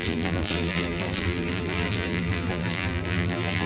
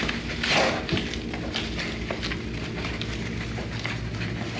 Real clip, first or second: second